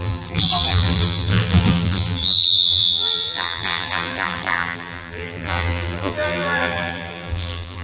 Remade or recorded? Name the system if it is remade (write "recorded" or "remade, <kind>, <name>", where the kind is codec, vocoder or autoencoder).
remade, vocoder, BigVGAN v2